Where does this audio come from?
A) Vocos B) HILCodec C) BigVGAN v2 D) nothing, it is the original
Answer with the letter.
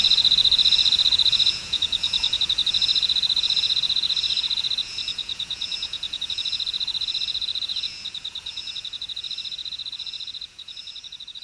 A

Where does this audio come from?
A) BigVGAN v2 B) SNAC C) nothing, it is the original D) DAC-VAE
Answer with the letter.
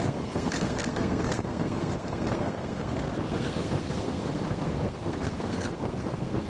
B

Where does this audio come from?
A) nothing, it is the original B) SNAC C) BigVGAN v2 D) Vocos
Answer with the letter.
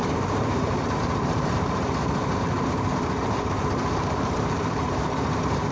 C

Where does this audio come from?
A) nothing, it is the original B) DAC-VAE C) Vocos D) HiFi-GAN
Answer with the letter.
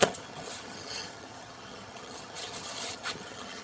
D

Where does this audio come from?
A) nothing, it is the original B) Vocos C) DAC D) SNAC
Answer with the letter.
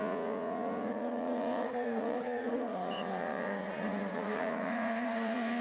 B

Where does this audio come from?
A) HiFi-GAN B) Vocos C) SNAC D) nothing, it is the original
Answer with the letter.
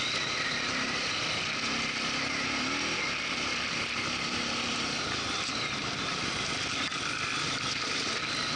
D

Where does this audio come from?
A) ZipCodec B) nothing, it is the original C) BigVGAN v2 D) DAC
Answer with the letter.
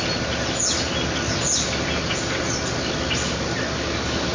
B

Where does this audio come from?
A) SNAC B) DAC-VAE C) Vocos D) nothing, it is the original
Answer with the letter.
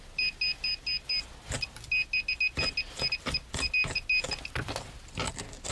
D